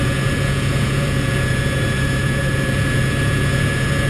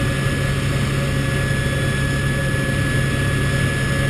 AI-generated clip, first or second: first